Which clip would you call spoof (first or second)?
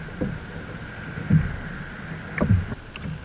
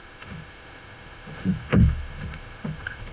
second